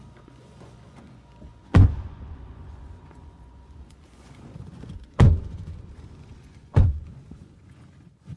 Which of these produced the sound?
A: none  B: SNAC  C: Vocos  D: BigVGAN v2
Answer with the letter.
C